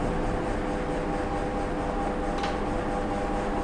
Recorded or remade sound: recorded